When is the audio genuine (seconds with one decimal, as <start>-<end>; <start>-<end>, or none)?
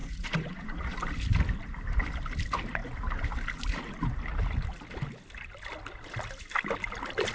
0.9-7.3